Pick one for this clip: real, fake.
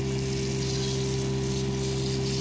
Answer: real